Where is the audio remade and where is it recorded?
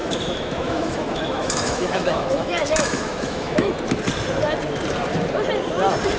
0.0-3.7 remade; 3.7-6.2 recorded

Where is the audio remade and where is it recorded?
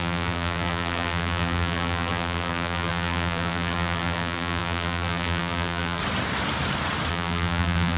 0.0-6.0 remade; 6.0-7.1 recorded; 7.1-8.0 remade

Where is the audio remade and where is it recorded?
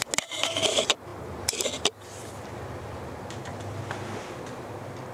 0.0-5.1 recorded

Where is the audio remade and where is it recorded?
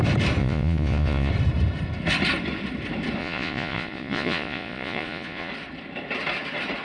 0.0-0.4 recorded; 0.4-1.3 remade; 1.3-3.2 recorded; 3.2-5.5 remade; 5.5-6.8 recorded